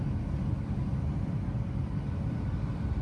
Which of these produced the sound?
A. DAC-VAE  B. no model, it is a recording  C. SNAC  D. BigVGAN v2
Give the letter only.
B